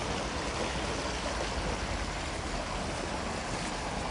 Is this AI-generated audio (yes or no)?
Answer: no